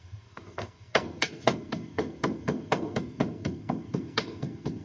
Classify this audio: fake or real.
fake